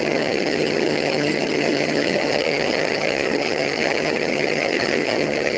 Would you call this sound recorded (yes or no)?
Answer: no